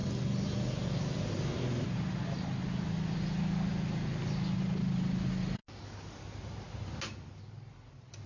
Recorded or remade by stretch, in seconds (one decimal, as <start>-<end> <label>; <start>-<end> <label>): 0.0-8.3 recorded